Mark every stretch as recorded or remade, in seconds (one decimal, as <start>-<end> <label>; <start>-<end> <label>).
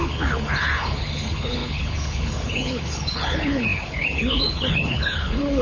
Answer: 0.0-5.6 remade